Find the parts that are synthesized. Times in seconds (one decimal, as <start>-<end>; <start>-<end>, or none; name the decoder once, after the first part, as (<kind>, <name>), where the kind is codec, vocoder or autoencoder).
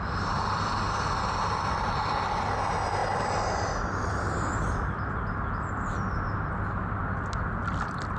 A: none